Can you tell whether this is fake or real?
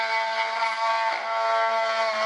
real